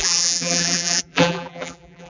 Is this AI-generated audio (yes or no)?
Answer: yes